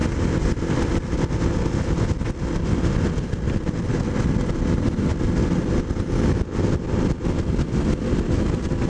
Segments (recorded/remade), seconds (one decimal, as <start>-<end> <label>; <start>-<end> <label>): 0.0-5.1 recorded; 5.1-5.8 remade; 5.8-8.9 recorded